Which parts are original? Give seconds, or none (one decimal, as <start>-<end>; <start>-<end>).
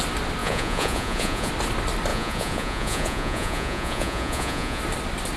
0.0-0.4; 1.5-2.1; 4.8-5.4